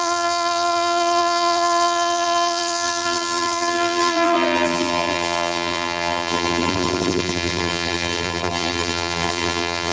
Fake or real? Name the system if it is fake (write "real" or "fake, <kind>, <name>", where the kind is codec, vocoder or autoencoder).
fake, vocoder, BigVGAN v2